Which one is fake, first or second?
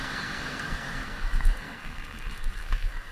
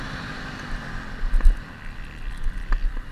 first